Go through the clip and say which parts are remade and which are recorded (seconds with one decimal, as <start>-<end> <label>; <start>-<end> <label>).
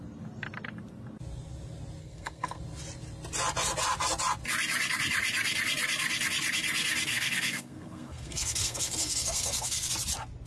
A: 0.0-2.0 recorded; 2.0-2.6 remade; 2.6-7.1 recorded; 7.1-9.9 remade; 9.9-10.5 recorded